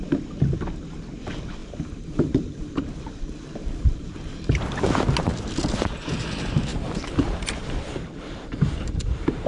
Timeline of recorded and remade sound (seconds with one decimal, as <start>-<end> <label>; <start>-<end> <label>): 0.0-1.6 recorded; 1.6-2.8 remade; 2.8-3.6 recorded; 3.6-4.6 remade; 4.6-6.7 recorded; 6.7-9.5 remade